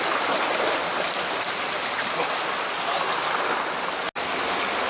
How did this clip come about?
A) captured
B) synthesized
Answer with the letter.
A